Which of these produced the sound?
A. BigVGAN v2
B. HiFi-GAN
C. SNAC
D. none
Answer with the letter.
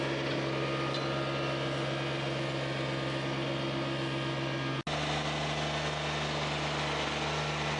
D